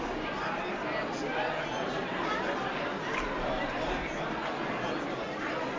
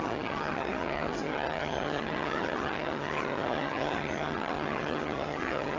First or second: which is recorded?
first